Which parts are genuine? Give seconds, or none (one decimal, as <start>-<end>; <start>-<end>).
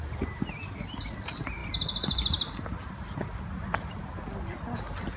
0.0-5.2